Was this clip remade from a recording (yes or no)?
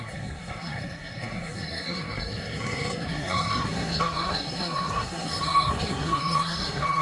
yes